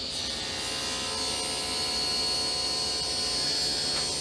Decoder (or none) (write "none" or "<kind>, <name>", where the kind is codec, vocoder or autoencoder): none